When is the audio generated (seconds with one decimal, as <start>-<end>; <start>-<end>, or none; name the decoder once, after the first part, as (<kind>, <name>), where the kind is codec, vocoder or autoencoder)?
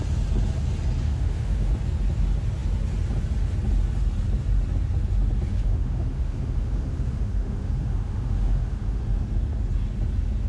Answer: 1.0-1.7 (autoencoder, DAC-VAE); 5.5-9.0